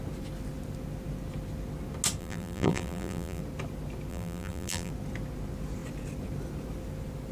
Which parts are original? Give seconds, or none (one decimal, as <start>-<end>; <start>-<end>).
0.0-2.2; 3.4-4.1; 4.9-7.3